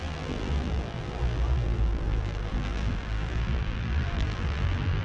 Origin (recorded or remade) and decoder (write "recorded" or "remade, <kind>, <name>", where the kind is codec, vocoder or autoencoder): remade, vocoder, BigVGAN v2